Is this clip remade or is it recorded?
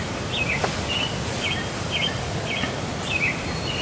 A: recorded